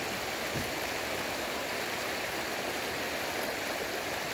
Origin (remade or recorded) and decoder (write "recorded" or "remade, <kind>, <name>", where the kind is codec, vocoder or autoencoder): recorded